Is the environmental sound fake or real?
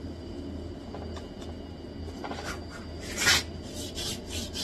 real